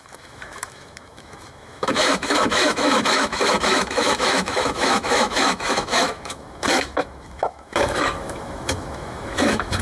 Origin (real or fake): fake